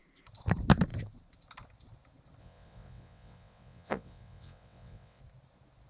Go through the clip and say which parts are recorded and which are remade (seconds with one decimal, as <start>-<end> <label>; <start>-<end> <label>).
0.0-2.4 recorded; 2.4-5.2 remade; 5.2-5.9 recorded